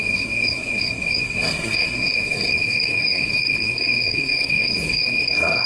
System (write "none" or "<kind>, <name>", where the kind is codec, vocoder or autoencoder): codec, SNAC